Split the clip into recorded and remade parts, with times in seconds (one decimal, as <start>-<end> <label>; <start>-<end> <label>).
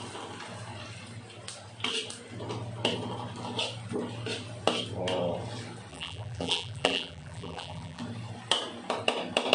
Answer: 0.0-5.9 recorded; 5.9-8.0 remade; 8.0-9.5 recorded